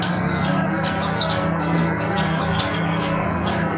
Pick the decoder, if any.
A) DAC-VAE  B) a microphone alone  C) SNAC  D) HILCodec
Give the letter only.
C